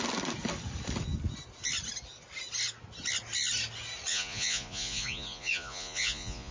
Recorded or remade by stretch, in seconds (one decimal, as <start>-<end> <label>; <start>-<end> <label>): 0.0-4.1 recorded; 4.1-6.5 remade